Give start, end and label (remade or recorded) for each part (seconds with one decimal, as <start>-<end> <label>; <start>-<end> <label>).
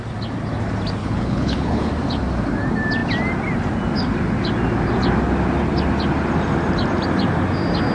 0.0-1.0 recorded; 1.0-1.9 remade; 1.9-7.9 recorded